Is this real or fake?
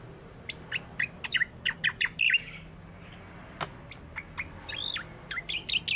real